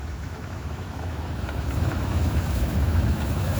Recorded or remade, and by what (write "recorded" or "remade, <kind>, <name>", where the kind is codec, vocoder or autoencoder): remade, autoencoder, DAC-VAE